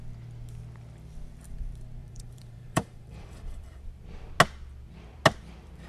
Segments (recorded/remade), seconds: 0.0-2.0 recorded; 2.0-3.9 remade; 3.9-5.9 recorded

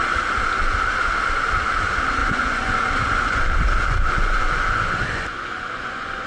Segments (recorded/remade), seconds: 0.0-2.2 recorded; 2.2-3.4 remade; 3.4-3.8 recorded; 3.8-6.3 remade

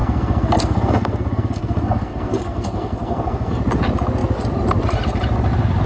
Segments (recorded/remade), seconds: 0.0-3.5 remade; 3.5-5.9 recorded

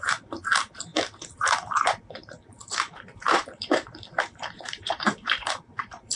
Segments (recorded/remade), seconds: 0.0-6.2 remade

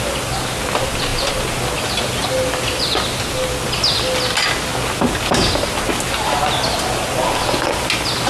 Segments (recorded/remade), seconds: 0.0-8.3 recorded

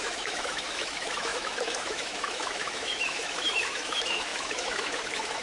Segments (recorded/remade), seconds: 0.0-5.4 remade